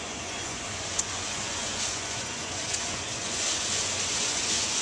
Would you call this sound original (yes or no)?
no